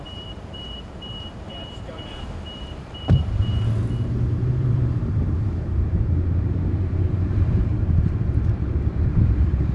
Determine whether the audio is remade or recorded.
remade